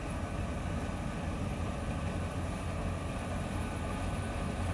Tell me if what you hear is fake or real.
real